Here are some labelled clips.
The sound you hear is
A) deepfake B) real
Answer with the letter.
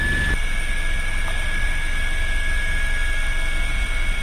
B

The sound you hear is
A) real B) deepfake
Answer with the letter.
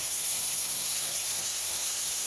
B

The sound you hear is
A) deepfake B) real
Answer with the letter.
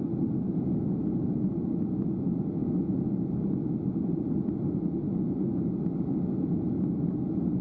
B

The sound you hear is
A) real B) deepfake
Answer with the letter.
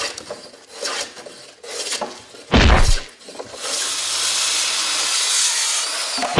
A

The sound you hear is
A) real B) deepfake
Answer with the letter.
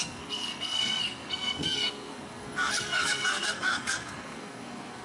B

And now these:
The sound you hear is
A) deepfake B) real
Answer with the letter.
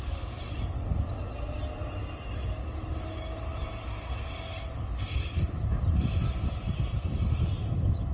B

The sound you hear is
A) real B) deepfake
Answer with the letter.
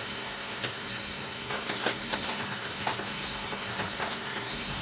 B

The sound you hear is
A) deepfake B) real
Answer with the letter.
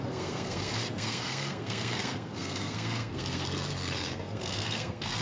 A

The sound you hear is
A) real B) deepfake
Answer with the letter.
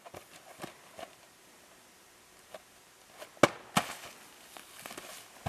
A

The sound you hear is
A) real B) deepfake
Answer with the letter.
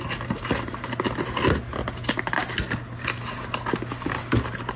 A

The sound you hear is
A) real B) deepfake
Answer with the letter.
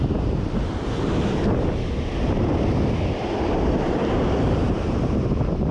A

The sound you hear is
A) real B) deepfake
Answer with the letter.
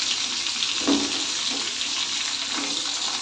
A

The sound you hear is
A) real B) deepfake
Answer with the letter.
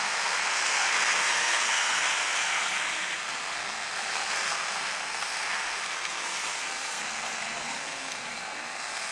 B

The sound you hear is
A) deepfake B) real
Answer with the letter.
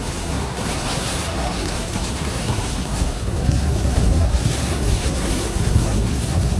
A